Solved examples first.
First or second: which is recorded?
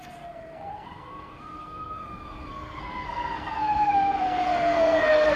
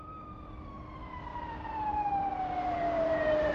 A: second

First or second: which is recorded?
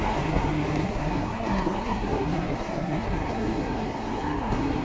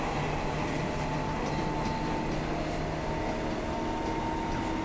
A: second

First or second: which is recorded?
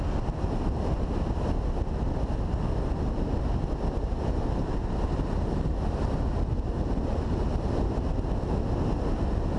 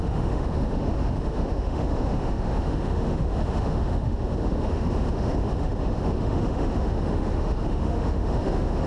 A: first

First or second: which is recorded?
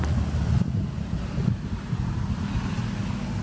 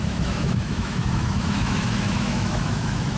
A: first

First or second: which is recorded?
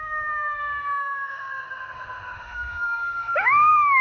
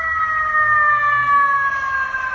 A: second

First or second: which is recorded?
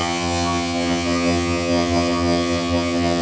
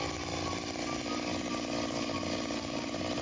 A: second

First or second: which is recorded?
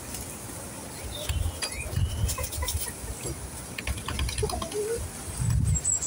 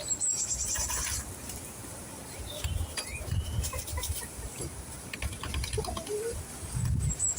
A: first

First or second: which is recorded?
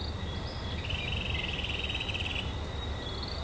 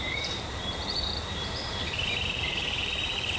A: first